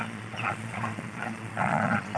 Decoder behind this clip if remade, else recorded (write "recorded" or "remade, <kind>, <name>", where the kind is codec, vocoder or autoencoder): remade, vocoder, Vocos